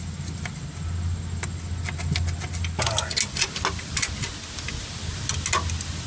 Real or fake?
real